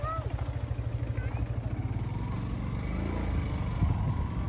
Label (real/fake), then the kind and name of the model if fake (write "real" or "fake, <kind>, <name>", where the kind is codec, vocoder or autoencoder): real